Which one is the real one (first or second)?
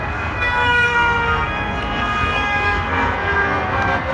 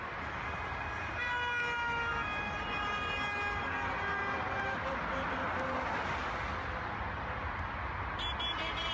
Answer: second